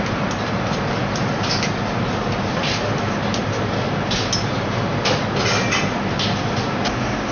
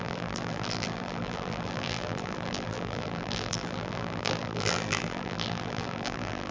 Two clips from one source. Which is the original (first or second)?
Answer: first